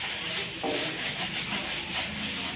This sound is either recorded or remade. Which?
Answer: recorded